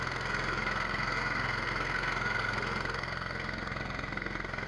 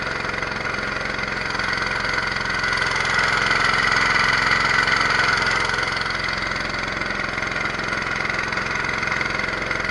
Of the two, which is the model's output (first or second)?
first